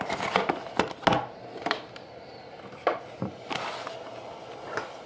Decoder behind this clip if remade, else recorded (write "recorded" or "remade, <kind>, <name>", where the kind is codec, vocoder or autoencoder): recorded